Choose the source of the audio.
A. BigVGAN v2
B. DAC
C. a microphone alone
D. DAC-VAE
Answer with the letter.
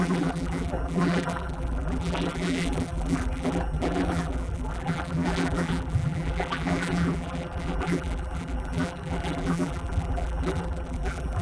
A